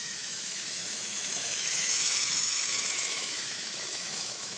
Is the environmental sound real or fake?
fake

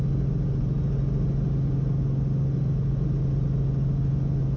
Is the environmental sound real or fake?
real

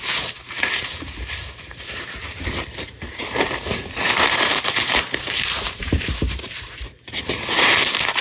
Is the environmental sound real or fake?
fake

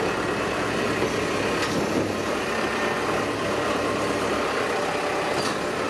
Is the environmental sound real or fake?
real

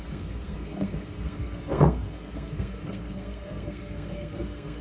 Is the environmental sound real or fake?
fake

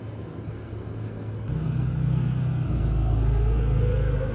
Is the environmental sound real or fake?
fake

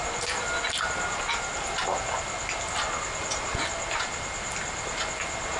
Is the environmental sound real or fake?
real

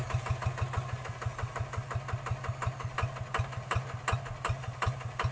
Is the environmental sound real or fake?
real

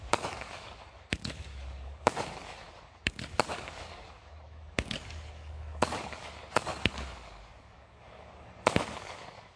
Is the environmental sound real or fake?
fake